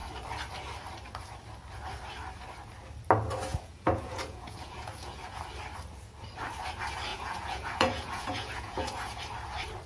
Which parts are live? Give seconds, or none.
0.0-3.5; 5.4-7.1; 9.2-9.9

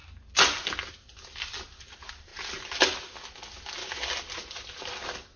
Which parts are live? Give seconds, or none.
0.0-5.4

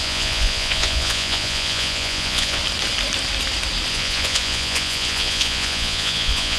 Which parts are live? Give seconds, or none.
2.6-3.9